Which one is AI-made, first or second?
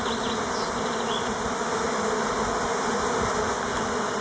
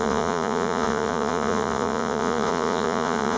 second